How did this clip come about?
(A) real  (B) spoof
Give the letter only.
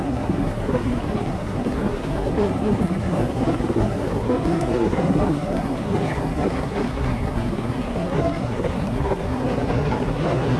B